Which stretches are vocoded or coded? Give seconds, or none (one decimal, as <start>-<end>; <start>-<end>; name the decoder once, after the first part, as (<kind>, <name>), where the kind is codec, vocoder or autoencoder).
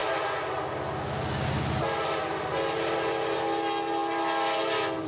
none